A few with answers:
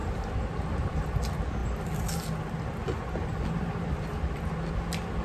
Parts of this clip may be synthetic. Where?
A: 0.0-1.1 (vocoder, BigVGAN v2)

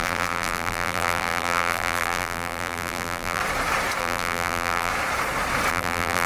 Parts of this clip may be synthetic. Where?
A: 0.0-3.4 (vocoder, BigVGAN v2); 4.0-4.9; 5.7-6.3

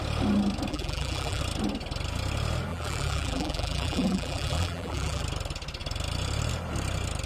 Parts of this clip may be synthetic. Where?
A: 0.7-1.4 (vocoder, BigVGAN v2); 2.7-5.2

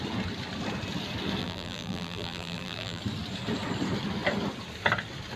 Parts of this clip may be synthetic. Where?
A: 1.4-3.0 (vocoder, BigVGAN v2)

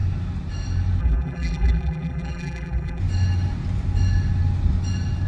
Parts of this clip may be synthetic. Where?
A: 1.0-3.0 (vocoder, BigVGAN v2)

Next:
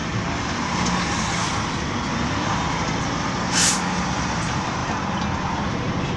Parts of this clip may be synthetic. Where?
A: none

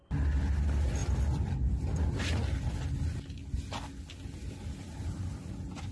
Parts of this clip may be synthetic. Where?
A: none

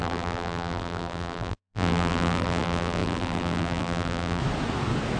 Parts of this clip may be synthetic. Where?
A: 0.0-4.4 (vocoder, BigVGAN v2)